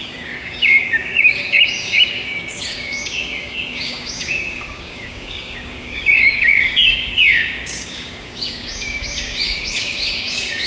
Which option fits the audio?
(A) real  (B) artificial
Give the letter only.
B